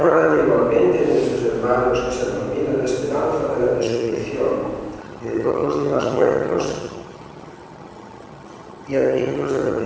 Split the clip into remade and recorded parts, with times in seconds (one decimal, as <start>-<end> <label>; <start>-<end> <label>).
0.0-0.4 remade; 0.4-3.8 recorded; 3.8-4.2 remade; 4.2-5.0 recorded; 5.0-9.9 remade